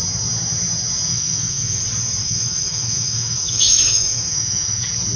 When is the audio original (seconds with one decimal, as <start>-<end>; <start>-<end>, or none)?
0.0-1.1; 1.8-2.2; 4.8-5.2